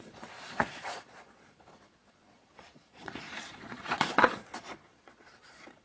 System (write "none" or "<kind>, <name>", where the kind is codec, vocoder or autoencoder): vocoder, Vocos